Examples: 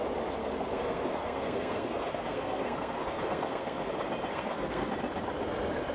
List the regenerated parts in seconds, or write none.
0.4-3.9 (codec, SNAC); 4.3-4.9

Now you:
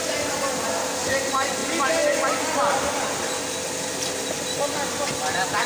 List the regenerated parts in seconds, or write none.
none

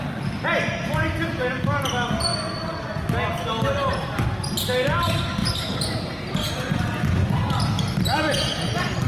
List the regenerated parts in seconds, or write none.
5.4-6.3 (vocoder, BigVGAN v2)

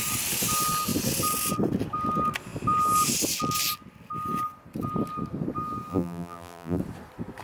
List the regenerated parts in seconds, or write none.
5.9-6.8 (vocoder, BigVGAN v2)